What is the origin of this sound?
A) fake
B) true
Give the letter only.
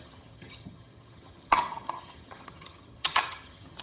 A